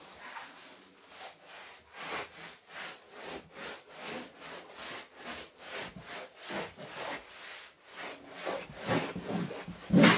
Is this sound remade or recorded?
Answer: recorded